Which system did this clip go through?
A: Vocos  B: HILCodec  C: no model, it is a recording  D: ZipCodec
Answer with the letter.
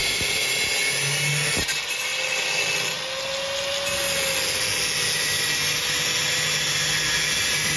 C